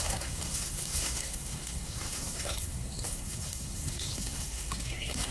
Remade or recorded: remade